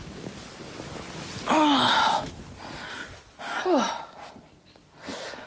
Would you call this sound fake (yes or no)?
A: no